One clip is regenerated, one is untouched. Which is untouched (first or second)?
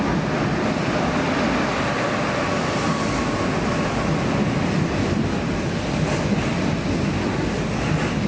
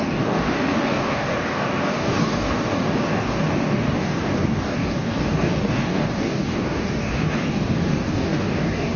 first